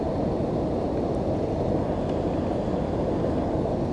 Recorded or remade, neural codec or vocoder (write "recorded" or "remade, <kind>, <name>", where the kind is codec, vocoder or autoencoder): recorded